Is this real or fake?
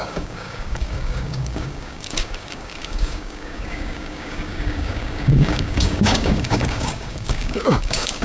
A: fake